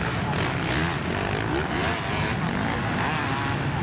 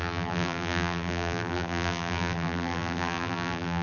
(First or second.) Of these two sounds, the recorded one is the first